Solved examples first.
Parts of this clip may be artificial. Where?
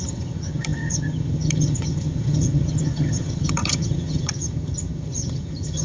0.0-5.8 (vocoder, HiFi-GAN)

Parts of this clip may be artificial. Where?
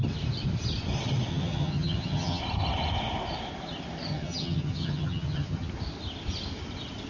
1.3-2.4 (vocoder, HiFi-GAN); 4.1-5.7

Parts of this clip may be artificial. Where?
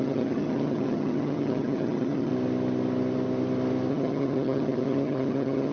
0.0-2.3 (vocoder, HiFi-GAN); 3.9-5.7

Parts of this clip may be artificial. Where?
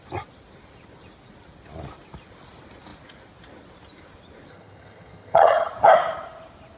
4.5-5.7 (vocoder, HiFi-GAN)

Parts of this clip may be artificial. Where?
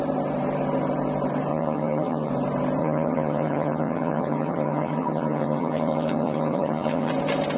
1.5-2.3 (vocoder, HiFi-GAN); 2.8-7.1